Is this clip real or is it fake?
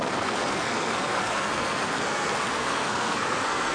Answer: fake